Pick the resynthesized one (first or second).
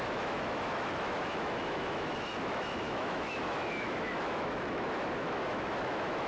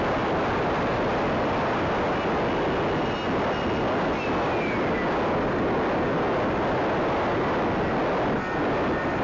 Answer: first